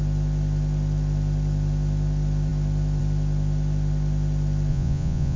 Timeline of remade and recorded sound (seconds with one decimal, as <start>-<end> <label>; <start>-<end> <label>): 0.0-4.7 recorded; 4.7-5.4 remade

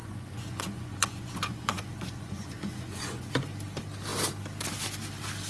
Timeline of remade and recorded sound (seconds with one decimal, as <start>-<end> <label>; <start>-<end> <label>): 0.0-3.3 remade; 3.3-5.5 recorded

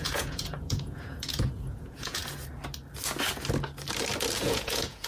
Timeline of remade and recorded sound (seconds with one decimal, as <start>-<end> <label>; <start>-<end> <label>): 0.0-2.2 remade; 2.2-4.4 recorded; 4.4-5.1 remade

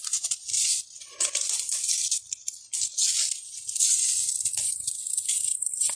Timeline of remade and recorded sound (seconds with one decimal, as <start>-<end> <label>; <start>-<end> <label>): 0.0-6.0 recorded